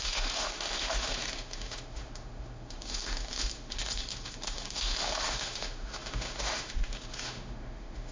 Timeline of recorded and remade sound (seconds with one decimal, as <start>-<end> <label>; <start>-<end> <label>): 0.0-8.1 remade